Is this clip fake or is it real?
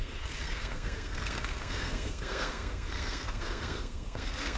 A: fake